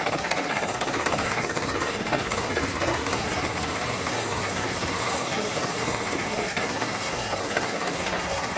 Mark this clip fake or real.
fake